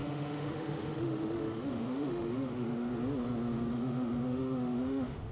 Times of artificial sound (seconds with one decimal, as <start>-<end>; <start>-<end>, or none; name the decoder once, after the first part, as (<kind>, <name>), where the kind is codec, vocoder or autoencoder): 0.0-2.9 (autoencoder, DAC-VAE); 3.7-5.3